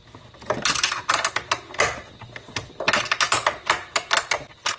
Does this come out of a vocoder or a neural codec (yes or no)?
no